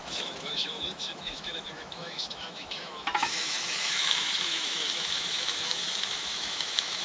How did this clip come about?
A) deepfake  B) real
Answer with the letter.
A